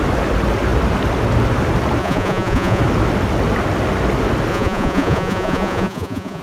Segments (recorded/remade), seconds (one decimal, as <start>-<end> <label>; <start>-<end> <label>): 0.0-2.0 recorded; 2.0-2.8 remade; 2.8-4.5 recorded; 4.5-6.4 remade